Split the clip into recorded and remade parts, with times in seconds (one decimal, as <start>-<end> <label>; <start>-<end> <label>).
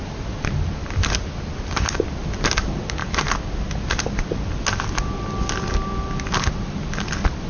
0.0-7.5 recorded